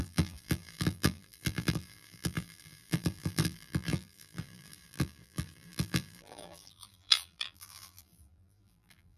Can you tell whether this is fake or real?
fake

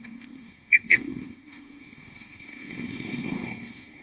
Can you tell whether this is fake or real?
fake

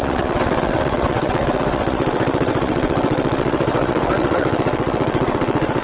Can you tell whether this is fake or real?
fake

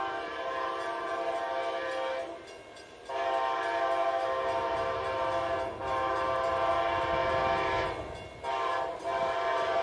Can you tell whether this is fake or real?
real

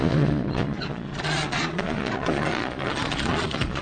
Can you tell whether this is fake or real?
fake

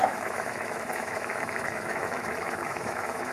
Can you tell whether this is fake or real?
fake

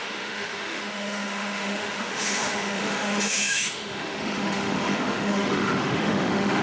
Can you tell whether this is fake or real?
fake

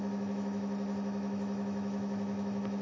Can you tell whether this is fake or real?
fake